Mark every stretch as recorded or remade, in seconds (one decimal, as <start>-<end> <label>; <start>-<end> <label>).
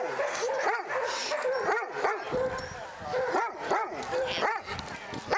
0.0-5.4 recorded